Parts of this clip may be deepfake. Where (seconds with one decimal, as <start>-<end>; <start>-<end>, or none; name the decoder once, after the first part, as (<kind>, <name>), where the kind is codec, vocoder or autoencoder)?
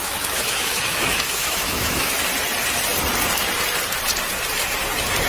0.0-2.1 (autoencoder, DAC-VAE)